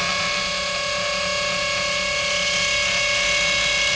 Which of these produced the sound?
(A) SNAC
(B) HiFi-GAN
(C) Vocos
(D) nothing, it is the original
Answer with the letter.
D